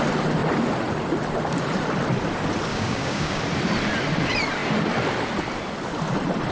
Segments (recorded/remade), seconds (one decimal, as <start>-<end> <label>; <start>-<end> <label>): 0.0-2.7 recorded; 2.7-3.4 remade; 3.4-6.5 recorded